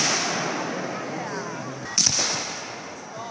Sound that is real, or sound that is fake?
real